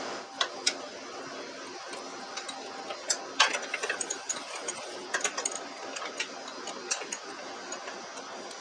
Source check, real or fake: real